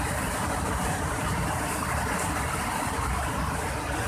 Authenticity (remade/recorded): recorded